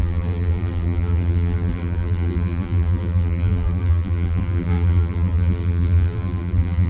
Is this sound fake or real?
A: fake